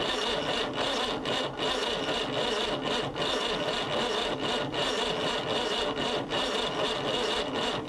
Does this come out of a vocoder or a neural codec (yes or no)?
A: no